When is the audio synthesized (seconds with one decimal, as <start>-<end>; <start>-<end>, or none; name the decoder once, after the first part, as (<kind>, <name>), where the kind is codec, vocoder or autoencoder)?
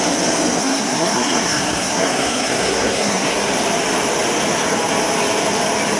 0.6-3.5 (codec, SNAC)